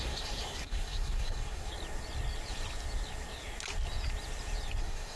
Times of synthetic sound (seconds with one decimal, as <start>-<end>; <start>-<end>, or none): 0.0-1.7; 4.8-5.2